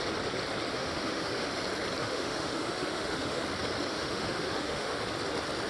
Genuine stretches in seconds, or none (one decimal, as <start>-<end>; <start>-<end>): 0.0-0.7; 1.5-2.0; 3.4-3.9; 5.0-5.7